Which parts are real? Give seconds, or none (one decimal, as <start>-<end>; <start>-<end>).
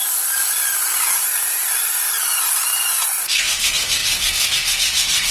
0.0-3.2